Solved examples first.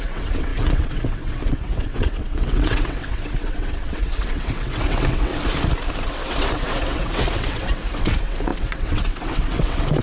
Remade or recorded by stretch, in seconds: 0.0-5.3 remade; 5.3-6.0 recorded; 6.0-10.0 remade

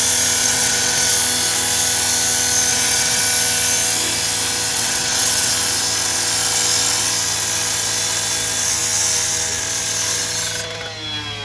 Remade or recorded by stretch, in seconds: 0.0-0.4 recorded; 0.4-1.1 remade; 1.1-2.7 recorded; 2.7-3.2 remade; 3.2-4.7 recorded; 4.7-5.5 remade; 5.5-11.4 recorded

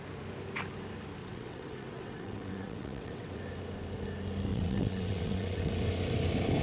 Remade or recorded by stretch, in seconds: 0.0-1.2 recorded; 1.2-3.4 remade; 3.4-4.5 recorded; 4.5-5.7 remade; 5.7-6.6 recorded

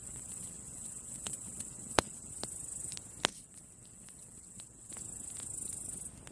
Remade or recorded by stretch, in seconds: 0.0-2.3 remade; 2.3-3.3 recorded; 3.3-4.9 remade; 4.9-6.3 recorded

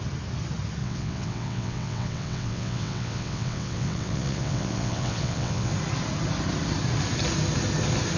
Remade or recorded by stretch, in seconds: 0.0-0.8 recorded; 0.8-5.7 remade; 5.7-8.2 recorded

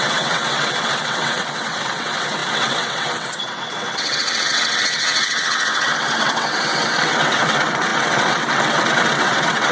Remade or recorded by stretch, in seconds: 0.0-9.7 remade

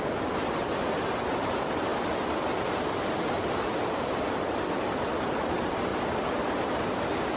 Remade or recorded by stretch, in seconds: 0.0-7.4 recorded